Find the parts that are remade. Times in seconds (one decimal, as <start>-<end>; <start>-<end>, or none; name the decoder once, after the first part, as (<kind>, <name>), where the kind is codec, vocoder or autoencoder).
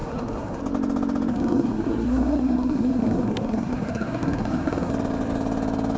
0.0-0.6 (codec, SNAC); 1.3-4.9